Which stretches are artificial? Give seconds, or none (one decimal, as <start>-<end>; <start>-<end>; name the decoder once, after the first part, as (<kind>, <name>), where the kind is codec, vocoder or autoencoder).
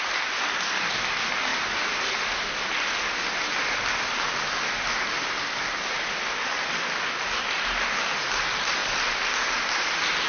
none